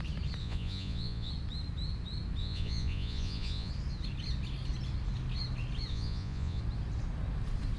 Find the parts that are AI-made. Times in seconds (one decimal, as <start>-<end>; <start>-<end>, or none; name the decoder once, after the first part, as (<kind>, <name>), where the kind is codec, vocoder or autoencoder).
0.4-1.3 (vocoder, Vocos); 2.4-3.7; 5.9-6.6